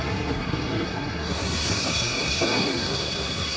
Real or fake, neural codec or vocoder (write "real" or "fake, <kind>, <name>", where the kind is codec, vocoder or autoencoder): fake, codec, SNAC